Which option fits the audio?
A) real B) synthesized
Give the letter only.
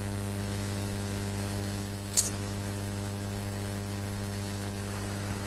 B